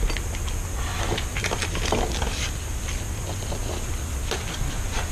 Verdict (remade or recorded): recorded